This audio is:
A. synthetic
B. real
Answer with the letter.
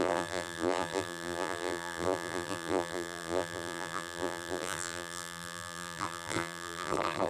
A